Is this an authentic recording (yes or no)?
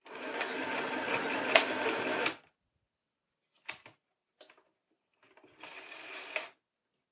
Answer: yes